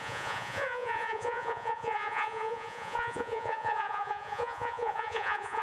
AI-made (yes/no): yes